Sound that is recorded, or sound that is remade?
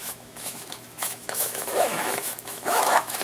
remade